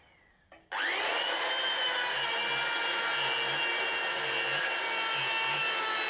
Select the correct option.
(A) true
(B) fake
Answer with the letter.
A